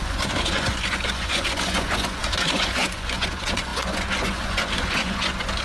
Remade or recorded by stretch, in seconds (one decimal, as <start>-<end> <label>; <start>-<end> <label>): 0.0-5.6 remade